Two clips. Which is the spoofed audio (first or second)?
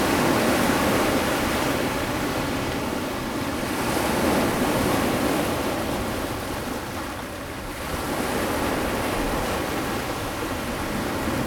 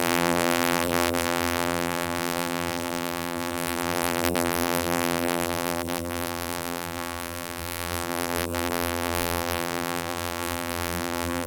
second